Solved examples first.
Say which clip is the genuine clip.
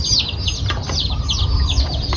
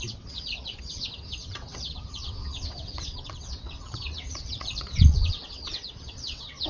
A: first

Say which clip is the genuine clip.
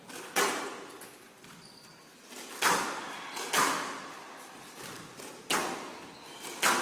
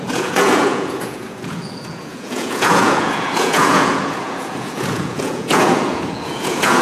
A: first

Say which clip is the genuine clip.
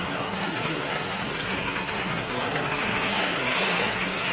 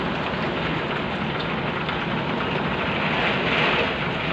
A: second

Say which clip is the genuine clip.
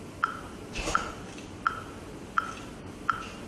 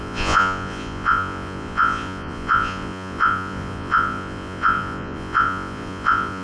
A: first